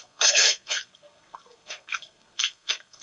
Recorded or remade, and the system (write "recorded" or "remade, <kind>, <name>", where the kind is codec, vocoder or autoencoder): remade, codec, SNAC